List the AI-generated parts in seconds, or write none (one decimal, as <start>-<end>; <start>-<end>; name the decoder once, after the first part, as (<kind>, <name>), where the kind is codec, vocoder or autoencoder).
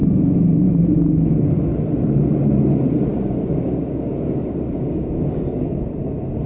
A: 3.1-5.9 (codec, DAC)